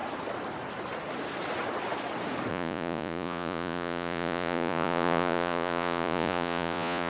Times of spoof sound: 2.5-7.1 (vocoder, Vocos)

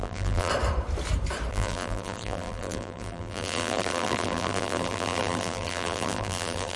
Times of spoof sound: 0.0-0.5 (vocoder, BigVGAN v2); 1.5-6.8

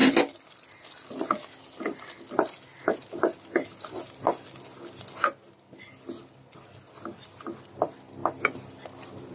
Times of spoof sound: none

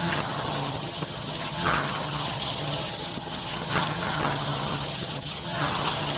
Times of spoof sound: 0.0-6.2 (vocoder, HiFi-GAN)